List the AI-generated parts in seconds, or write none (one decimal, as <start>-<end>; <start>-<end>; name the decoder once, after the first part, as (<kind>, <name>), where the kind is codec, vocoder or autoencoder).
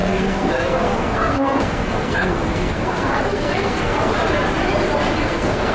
0.0-4.1 (codec, SNAC); 5.2-5.7